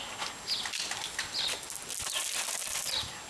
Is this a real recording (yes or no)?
yes